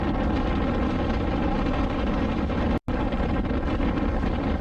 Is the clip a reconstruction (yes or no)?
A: no